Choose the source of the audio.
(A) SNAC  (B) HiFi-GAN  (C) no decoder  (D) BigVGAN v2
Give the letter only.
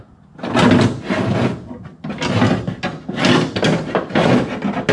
C